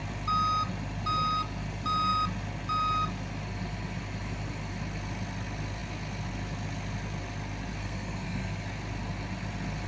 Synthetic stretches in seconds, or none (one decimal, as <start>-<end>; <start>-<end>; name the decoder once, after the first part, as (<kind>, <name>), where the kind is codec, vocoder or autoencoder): 7.8-8.6 (codec, SNAC)